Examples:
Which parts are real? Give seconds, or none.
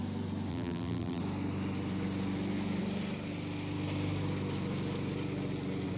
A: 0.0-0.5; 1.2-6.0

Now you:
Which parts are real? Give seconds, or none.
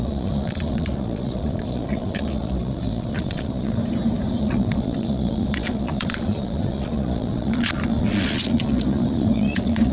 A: 3.8-4.4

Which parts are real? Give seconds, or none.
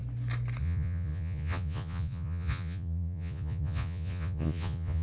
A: 0.0-0.6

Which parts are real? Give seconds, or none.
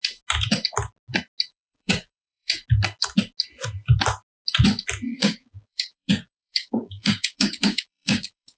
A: 0.0-1.5; 2.6-5.1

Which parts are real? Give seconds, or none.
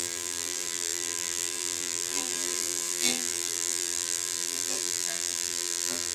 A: none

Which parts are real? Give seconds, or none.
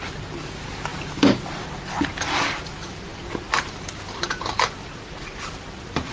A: 0.0-6.1